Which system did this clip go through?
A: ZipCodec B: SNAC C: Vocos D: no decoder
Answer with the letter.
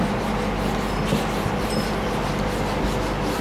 D